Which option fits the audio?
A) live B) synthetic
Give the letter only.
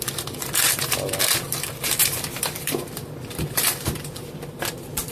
B